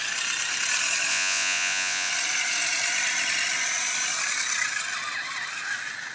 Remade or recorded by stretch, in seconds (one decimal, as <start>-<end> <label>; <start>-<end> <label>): 0.0-1.1 recorded; 1.1-2.1 remade; 2.1-6.1 recorded